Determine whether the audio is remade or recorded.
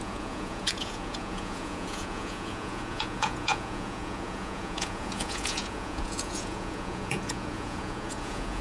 remade